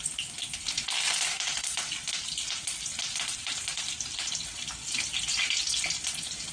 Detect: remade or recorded recorded